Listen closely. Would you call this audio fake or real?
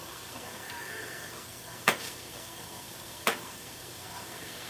fake